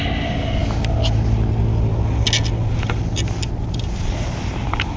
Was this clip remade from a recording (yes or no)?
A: no